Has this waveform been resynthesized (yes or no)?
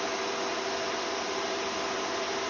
no